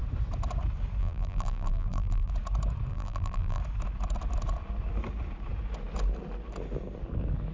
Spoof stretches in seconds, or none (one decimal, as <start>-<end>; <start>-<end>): 1.0-2.3; 2.9-3.6